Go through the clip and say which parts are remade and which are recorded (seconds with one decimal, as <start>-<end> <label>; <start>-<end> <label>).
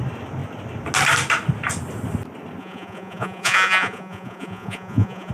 0.0-2.6 recorded; 2.6-5.3 remade